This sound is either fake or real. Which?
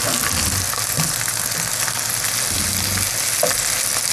real